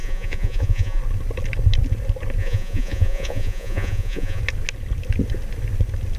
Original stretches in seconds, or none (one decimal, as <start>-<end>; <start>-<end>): 1.0-2.4; 4.4-6.2

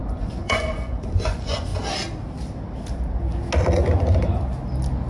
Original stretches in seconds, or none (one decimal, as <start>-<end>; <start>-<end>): 1.7-5.1

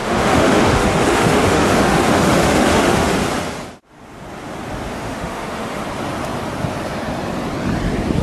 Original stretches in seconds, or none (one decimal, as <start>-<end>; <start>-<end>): 3.1-4.9; 5.8-8.2

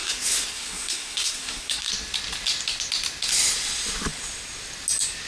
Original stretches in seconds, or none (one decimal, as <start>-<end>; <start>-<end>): 1.9-5.3

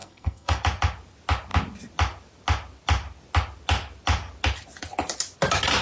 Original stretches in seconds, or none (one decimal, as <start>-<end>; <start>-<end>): 0.6-5.8

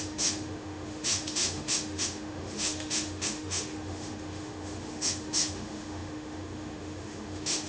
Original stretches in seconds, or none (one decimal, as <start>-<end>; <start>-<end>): none

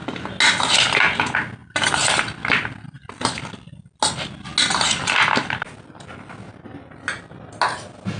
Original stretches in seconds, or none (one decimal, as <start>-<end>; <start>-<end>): 0.0-8.2

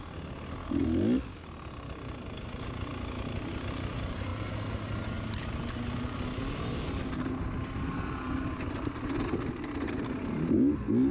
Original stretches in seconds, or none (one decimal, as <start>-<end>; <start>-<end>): 0.0-11.1